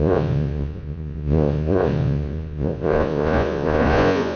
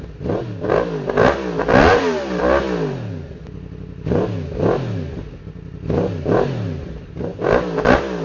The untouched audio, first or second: second